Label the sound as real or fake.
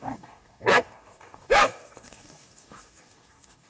fake